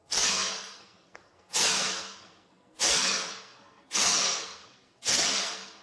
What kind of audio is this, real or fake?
fake